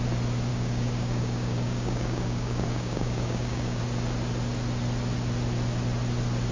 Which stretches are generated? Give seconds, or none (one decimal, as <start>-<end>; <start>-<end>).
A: 0.5-3.8